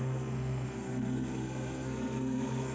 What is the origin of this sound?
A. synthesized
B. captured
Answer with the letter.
A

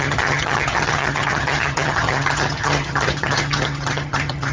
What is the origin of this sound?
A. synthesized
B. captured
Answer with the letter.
A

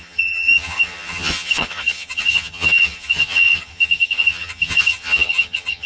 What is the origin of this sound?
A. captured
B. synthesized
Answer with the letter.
B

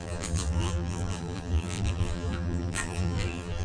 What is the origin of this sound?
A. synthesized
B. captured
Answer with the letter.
A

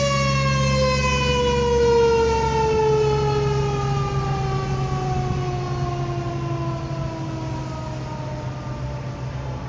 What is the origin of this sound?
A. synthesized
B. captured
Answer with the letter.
B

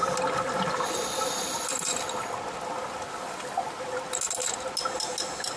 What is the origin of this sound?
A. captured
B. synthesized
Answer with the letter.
A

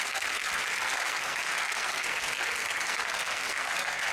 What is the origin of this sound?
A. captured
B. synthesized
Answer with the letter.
B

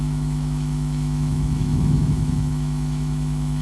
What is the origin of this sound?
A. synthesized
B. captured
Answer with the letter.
A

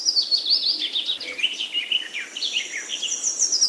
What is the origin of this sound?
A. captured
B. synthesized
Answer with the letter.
A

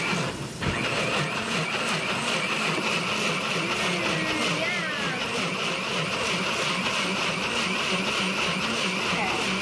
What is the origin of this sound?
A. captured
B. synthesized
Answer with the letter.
A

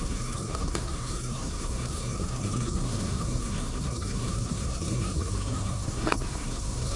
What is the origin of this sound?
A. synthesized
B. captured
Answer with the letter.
A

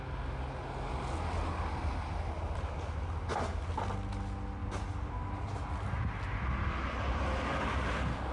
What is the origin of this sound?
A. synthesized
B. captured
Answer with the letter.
B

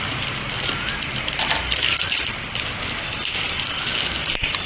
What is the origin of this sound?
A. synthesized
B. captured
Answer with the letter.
B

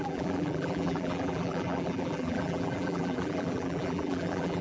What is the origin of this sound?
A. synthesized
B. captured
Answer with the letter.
A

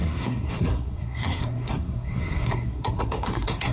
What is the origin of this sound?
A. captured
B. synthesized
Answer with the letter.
B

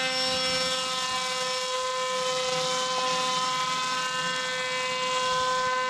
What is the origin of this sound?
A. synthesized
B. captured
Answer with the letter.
B